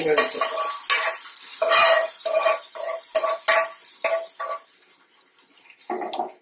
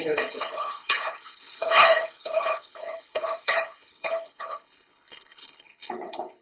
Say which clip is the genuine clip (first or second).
first